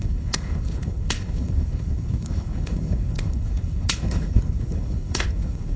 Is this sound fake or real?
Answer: fake